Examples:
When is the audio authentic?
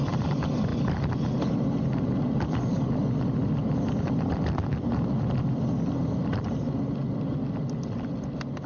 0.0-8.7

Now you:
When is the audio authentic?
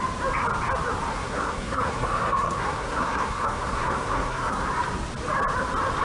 0.0-1.1; 4.7-6.0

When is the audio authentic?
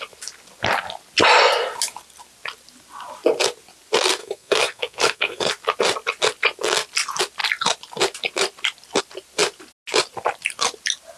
0.0-4.2; 5.5-11.2